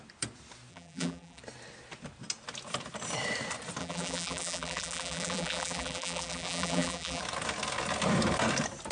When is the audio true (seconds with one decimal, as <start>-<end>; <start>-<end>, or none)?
0.0-0.7; 1.4-3.8; 7.2-8.9